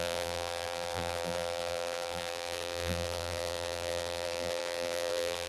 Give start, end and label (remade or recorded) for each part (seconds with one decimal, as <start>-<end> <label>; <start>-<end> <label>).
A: 0.0-5.5 remade